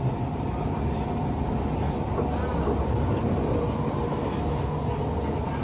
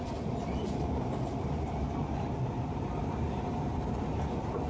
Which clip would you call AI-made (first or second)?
second